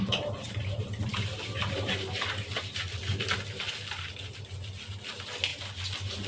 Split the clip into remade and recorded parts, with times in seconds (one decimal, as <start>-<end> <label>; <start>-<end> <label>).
0.0-6.3 recorded